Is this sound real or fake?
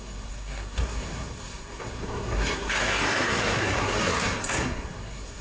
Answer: fake